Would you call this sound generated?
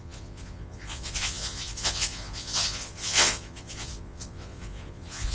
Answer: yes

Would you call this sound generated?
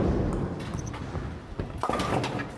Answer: no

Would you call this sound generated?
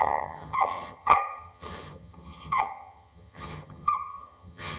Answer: yes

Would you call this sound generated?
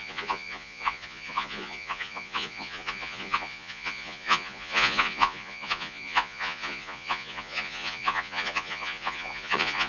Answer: yes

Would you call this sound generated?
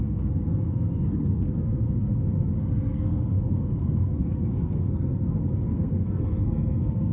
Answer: yes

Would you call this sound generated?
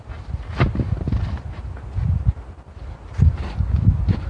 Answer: no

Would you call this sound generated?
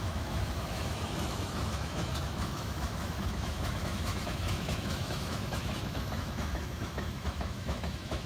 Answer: yes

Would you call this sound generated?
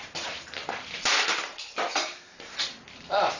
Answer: yes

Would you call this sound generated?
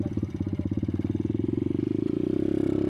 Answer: no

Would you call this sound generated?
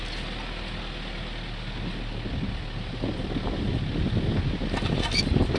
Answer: no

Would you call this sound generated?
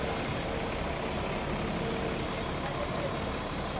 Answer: no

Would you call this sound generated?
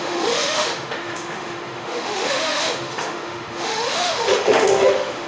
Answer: yes